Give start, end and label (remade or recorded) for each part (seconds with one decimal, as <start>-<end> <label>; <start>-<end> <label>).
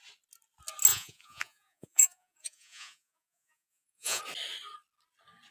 0.0-0.9 recorded; 0.9-4.2 remade; 4.2-5.5 recorded